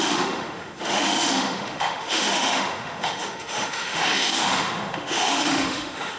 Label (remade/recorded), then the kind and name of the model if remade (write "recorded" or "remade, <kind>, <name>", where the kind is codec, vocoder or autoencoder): remade, autoencoder, DAC-VAE